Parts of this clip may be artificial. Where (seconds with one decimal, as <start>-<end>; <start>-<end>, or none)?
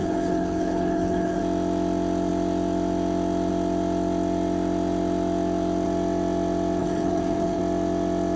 0.0-1.4; 6.8-7.6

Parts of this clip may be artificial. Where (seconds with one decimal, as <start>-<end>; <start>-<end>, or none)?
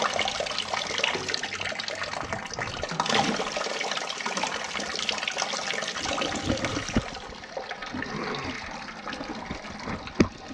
none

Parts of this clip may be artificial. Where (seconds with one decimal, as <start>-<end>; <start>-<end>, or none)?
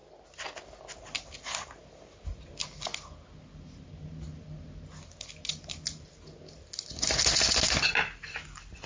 none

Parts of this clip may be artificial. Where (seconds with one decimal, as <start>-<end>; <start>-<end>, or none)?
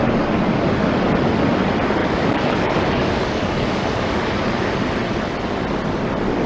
0.0-0.6; 2.0-4.3